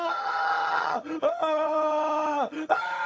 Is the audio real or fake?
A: fake